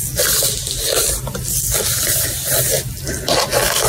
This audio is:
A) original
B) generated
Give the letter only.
A